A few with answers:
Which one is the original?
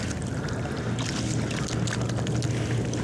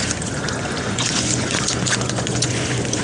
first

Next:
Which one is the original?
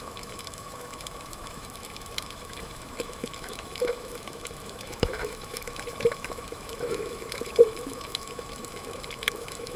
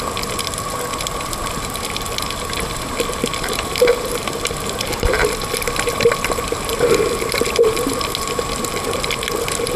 second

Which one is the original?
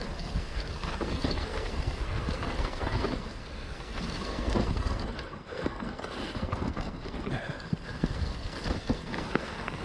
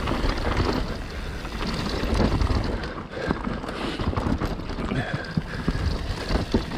second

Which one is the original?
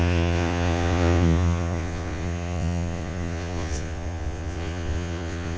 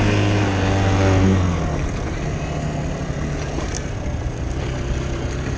second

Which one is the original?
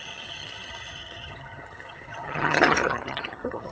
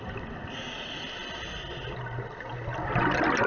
second